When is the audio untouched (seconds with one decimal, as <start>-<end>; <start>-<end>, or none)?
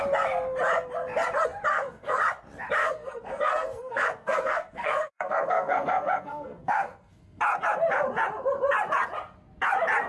0.0-1.7; 2.2-2.8; 7.4-10.1